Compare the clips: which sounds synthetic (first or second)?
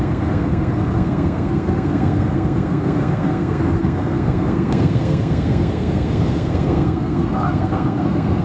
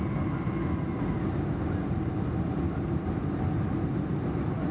first